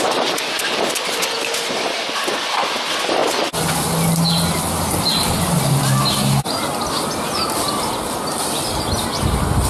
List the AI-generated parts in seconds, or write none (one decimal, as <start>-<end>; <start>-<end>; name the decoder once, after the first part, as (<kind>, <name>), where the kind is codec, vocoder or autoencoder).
none